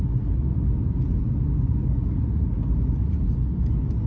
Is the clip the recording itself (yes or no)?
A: yes